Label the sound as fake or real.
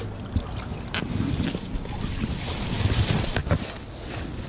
real